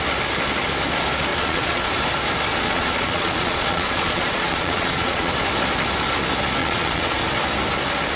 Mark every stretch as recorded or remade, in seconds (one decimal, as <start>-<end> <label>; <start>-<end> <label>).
0.0-1.3 recorded; 1.3-1.9 remade; 1.9-2.5 recorded; 2.5-5.3 remade; 5.3-6.6 recorded; 6.6-7.2 remade; 7.2-8.2 recorded